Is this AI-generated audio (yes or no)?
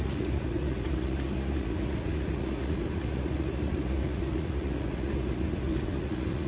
yes